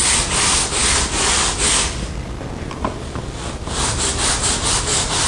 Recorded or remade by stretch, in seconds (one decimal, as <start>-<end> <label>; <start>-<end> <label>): 0.0-5.3 recorded